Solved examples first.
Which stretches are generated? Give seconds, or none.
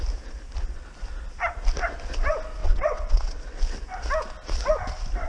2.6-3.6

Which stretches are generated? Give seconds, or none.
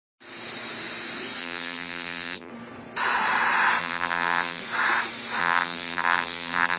1.4-2.5; 3.8-4.6; 5.4-6.8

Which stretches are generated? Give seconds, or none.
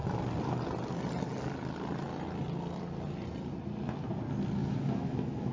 4.6-5.5